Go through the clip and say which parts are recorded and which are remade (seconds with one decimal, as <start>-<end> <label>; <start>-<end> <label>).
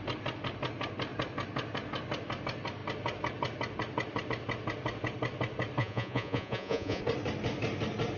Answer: 0.0-5.8 recorded; 5.8-7.0 remade; 7.0-8.2 recorded